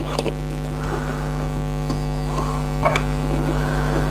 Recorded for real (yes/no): no